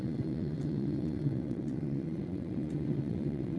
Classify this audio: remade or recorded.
remade